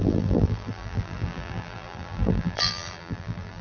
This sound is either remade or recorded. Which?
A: remade